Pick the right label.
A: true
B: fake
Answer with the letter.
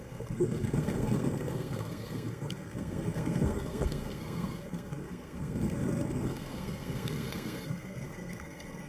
B